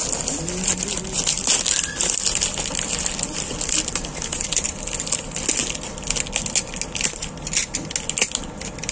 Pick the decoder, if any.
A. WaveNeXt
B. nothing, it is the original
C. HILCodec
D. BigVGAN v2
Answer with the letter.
B